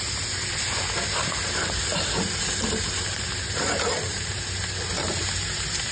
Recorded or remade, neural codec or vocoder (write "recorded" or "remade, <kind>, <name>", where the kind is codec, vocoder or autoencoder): remade, vocoder, BigVGAN v2